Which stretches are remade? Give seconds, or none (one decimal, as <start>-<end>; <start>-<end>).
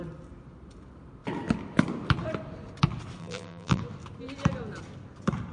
3.2-3.8